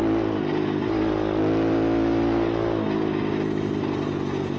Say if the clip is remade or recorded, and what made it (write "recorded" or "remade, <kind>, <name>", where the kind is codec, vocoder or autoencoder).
recorded